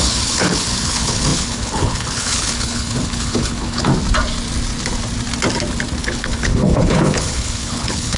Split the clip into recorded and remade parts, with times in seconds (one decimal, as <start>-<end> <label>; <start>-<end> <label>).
0.0-3.9 remade; 3.9-6.0 recorded; 6.0-8.2 remade